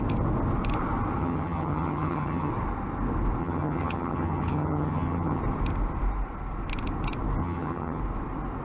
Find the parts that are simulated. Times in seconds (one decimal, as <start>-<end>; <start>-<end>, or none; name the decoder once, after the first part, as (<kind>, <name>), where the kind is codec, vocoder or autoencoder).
1.2-2.5 (vocoder, HiFi-GAN); 3.4-5.4; 7.4-8.0